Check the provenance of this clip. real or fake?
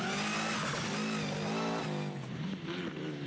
real